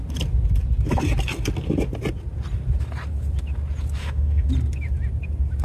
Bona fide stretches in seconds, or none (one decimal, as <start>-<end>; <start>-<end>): 0.0-4.0; 4.5-5.6